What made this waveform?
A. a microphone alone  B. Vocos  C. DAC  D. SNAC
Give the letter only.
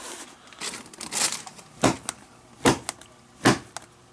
A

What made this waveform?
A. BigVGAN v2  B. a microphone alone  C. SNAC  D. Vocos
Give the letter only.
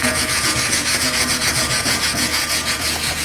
D